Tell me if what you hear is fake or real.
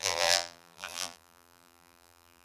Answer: fake